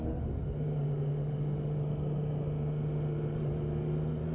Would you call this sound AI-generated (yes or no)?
no